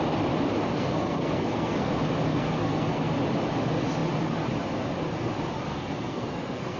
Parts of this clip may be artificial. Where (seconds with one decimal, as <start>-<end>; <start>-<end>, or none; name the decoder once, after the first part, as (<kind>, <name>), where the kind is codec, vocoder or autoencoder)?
0.5-1.9 (codec, SNAC); 2.3-3.1; 5.7-6.8